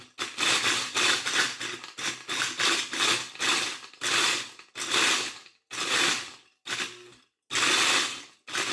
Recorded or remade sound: recorded